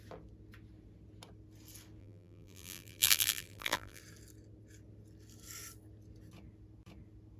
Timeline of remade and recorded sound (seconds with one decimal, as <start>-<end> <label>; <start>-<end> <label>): 0.0-2.0 recorded; 2.0-4.0 remade; 4.0-7.4 recorded